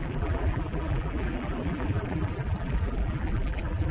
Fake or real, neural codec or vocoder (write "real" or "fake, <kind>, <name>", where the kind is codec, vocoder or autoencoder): fake, vocoder, BigVGAN v2